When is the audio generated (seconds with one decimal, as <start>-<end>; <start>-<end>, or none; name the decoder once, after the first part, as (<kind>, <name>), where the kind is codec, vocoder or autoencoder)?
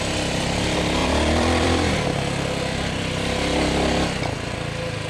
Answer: 1.0-1.9 (vocoder, BigVGAN v2)